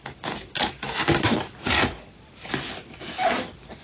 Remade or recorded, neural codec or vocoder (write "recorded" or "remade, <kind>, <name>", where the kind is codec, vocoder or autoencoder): recorded